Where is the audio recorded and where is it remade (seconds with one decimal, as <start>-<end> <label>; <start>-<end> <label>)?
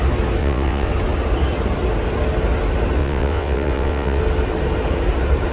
0.0-0.4 recorded; 0.4-0.9 remade; 0.9-3.0 recorded; 3.0-4.2 remade; 4.2-5.5 recorded